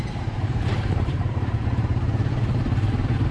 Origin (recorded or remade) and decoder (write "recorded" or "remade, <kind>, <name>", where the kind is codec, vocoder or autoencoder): remade, vocoder, BigVGAN v2